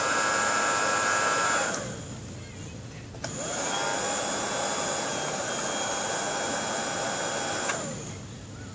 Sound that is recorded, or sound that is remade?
recorded